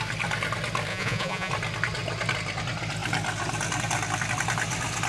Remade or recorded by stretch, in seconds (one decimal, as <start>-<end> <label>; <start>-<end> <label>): 0.0-0.9 recorded; 0.9-1.5 remade; 1.5-5.1 recorded